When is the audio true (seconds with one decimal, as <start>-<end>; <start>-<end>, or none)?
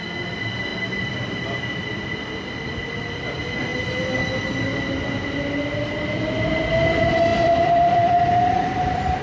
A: 0.0-0.7; 1.3-7.3